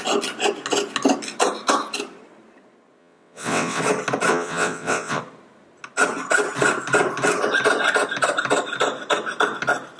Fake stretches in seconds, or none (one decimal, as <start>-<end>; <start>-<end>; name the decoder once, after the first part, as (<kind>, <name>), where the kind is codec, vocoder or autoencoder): 3.0-3.8 (vocoder, WaveNeXt); 4.3-5.2